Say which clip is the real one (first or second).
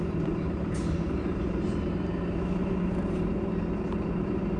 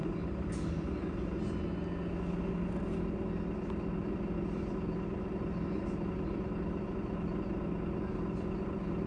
second